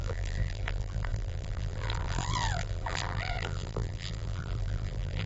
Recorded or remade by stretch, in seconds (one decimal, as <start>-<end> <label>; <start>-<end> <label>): 0.0-5.3 remade